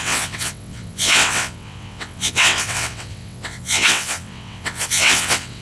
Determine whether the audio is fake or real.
fake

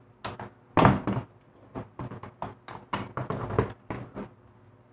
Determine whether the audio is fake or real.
real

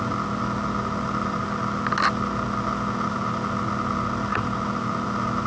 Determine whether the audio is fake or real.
real